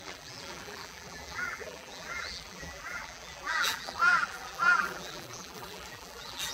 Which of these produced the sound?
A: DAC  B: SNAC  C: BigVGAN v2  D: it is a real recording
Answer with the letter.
C